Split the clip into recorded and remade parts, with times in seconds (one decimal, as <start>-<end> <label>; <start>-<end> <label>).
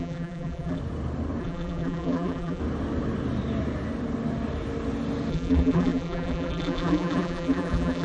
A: 0.0-0.8 remade; 0.8-1.4 recorded; 1.4-2.6 remade; 2.6-5.3 recorded; 5.3-8.0 remade